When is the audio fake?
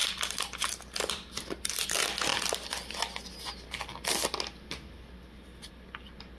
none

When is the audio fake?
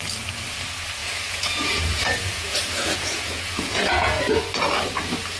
1.0-4.2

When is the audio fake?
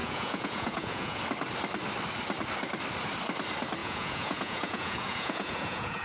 0.0-1.2; 3.8-6.0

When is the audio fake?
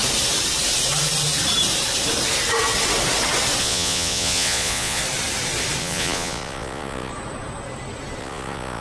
3.6-5.0; 5.8-7.1; 8.2-8.8